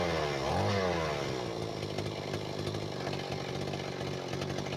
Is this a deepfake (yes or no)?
no